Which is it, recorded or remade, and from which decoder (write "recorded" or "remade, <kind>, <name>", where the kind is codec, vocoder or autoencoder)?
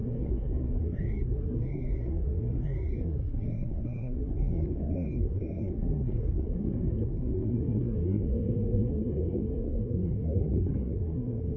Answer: remade, codec, SNAC